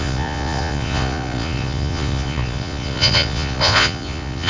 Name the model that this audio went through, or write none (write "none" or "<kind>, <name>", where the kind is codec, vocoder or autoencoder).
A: vocoder, Vocos